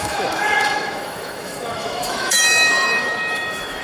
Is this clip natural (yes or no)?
no